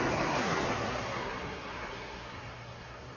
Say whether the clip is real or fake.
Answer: fake